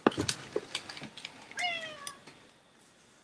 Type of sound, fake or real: real